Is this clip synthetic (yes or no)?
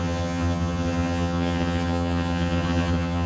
yes